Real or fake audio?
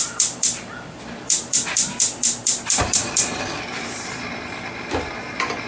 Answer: fake